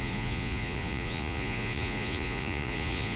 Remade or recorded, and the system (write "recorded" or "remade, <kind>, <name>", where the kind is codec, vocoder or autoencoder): remade, vocoder, Vocos